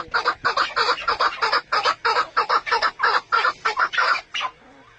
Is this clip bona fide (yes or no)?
yes